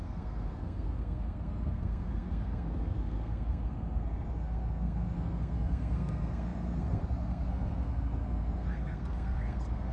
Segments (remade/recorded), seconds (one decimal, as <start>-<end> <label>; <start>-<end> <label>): 0.0-9.9 remade